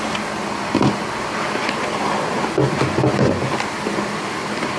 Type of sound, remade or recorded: recorded